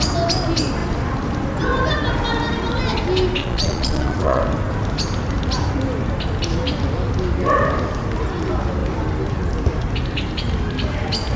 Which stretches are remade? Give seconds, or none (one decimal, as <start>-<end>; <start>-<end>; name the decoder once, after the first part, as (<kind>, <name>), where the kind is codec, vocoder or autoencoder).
3.4-4.4 (vocoder, Vocos)

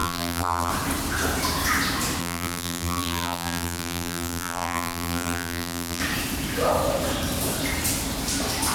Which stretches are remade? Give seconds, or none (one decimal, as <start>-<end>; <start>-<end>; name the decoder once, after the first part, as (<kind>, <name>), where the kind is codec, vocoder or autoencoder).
0.0-0.7 (vocoder, BigVGAN v2); 2.2-6.0

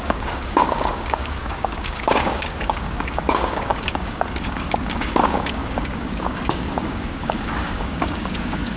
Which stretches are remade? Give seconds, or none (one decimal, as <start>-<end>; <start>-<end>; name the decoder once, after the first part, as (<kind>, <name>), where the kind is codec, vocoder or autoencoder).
0.0-8.8 (codec, DAC)

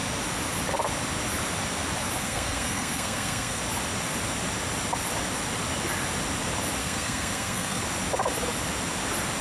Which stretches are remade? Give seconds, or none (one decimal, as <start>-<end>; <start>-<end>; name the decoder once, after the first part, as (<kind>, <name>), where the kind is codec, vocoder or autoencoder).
2.2-3.6 (codec, SNAC); 6.8-7.8

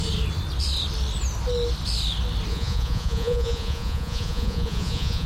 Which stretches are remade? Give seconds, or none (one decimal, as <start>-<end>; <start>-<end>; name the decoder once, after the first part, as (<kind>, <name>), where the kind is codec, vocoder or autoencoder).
2.5-5.3 (vocoder, Vocos)

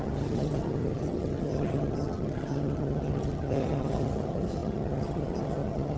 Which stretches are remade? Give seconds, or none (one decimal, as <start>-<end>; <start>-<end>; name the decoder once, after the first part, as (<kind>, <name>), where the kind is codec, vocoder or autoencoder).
0.0-6.0 (vocoder, HiFi-GAN)

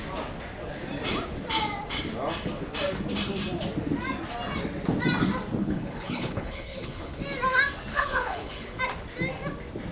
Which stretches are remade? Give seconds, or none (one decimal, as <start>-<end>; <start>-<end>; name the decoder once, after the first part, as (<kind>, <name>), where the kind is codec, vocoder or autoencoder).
5.6-7.2 (codec, HILCodec); 7.9-8.8